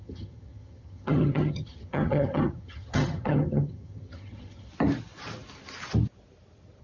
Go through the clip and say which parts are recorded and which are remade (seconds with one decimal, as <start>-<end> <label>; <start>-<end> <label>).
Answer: 0.0-4.7 remade; 4.7-6.8 recorded